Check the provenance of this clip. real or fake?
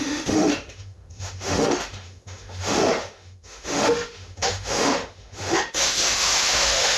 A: fake